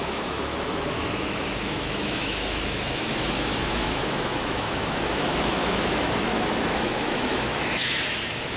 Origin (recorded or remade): remade